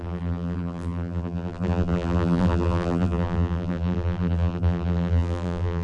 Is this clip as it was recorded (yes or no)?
no